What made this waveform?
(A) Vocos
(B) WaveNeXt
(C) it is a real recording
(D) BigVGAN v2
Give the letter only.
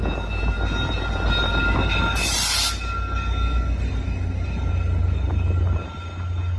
C